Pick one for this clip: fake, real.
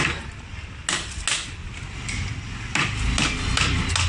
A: real